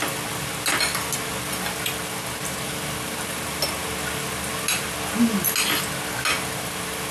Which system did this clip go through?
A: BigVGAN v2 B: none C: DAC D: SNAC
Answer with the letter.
B